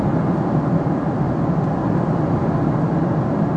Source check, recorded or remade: recorded